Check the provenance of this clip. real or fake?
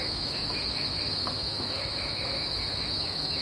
fake